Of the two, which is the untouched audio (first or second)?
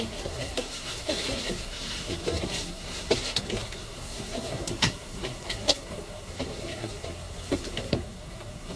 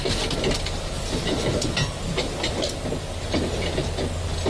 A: second